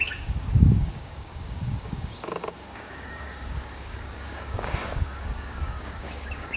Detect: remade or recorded remade